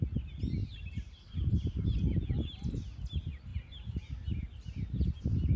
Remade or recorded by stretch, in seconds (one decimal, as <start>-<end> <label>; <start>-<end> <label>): 0.0-0.6 recorded; 0.6-3.0 remade; 3.0-3.5 recorded; 3.5-5.6 remade